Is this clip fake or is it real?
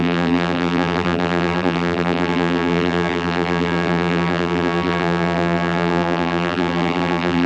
fake